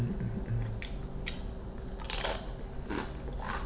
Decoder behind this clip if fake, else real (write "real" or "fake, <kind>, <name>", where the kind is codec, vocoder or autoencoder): real